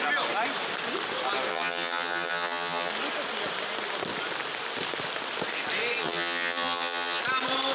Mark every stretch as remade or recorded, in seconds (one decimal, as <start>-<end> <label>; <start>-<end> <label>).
0.0-1.5 recorded; 1.5-2.9 remade; 2.9-6.0 recorded; 6.0-7.2 remade; 7.2-7.7 recorded